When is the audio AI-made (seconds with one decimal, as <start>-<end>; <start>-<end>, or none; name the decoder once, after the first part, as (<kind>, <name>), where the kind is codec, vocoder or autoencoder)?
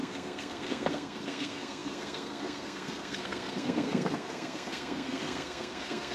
0.0-6.1 (codec, SNAC)